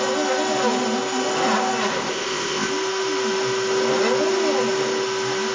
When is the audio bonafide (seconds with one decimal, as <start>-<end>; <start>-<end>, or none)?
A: 0.0-1.9; 2.7-5.5